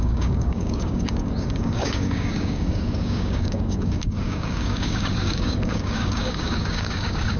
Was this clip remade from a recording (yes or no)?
yes